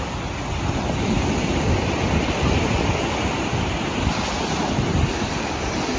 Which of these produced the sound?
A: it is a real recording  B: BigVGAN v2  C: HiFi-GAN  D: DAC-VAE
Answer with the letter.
A